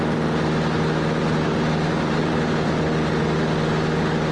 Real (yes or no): yes